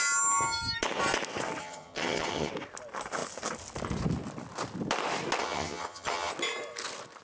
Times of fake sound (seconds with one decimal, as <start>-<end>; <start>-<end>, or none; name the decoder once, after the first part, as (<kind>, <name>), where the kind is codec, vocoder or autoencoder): 1.6-2.5 (vocoder, HiFi-GAN); 5.4-6.3